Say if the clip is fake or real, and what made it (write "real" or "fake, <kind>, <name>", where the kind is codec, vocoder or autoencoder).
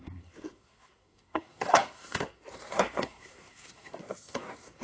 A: fake, codec, SNAC